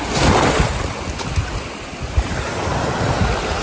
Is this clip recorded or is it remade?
recorded